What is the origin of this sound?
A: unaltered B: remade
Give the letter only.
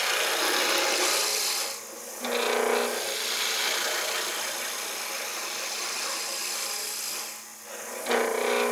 A